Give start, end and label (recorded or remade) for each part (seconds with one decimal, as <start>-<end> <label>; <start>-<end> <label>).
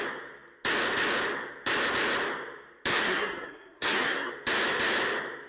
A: 0.0-2.9 recorded; 2.9-4.3 remade; 4.3-5.5 recorded